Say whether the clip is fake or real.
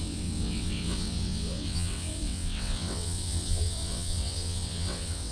fake